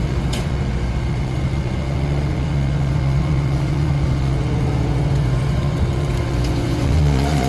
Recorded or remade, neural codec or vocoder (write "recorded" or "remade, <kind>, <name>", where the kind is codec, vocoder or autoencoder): remade, vocoder, Vocos